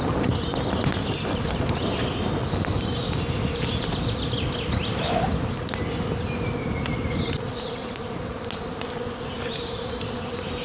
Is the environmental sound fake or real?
real